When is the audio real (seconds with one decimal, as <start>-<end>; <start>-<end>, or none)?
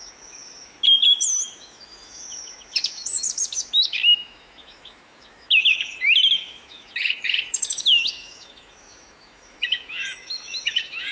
none